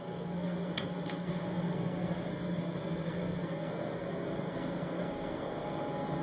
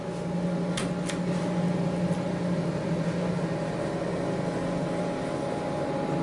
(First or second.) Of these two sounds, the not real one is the first